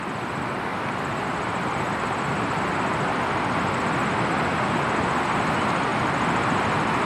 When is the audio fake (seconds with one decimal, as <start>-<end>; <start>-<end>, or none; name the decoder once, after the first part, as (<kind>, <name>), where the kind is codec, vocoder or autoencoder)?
0.7-2.6 (vocoder, BigVGAN v2)

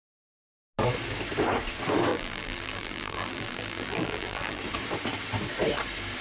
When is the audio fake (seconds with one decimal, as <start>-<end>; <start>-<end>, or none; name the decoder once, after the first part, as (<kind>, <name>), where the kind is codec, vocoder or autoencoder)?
2.1-4.6 (vocoder, BigVGAN v2)

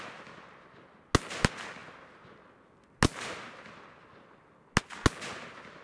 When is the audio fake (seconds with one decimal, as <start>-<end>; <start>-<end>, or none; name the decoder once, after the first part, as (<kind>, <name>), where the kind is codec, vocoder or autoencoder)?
none

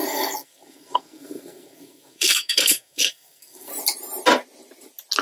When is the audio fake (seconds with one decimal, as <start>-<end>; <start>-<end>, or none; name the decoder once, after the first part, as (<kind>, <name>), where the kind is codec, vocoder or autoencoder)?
0.0-3.7 (codec, SNAC)